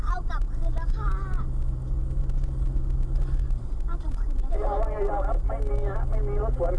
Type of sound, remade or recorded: recorded